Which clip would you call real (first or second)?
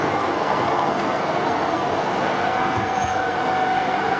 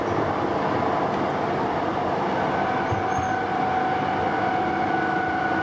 second